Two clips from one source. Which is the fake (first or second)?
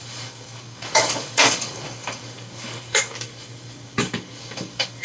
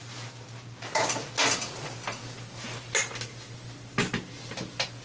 first